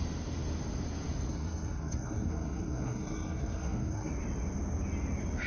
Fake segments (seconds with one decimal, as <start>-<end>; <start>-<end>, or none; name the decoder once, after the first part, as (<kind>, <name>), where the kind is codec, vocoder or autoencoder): 1.3-4.1 (codec, SNAC)